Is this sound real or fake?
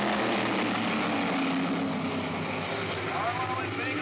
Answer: real